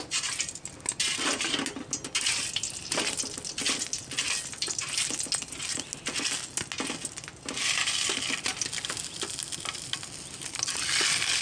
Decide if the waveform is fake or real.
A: real